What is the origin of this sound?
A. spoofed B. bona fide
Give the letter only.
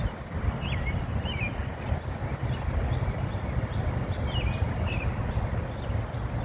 B